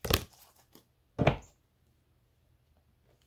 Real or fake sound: real